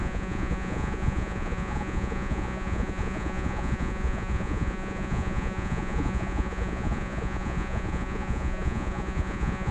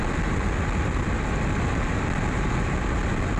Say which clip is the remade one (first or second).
first